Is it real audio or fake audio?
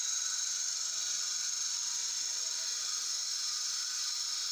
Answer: real